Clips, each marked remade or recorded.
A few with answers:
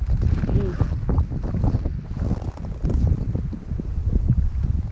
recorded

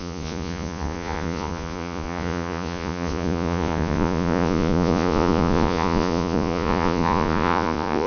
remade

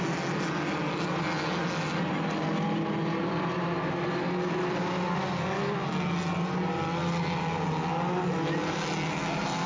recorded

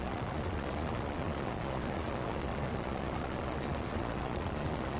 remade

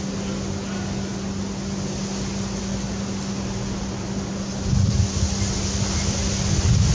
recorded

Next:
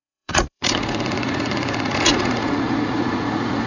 remade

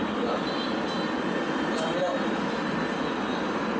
recorded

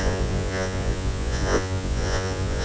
remade